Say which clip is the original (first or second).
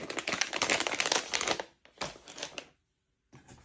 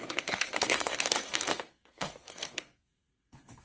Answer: first